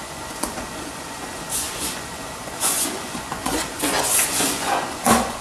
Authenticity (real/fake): fake